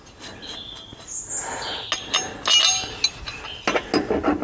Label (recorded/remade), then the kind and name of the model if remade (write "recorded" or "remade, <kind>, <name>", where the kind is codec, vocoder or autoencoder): recorded